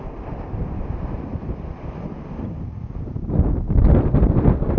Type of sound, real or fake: real